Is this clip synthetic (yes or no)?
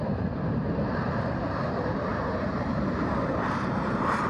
yes